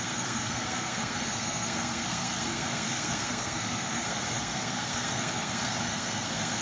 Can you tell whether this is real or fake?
fake